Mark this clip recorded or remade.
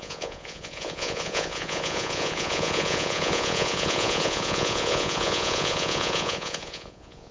remade